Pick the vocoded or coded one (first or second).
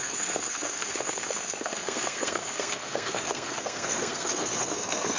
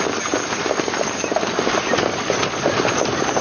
first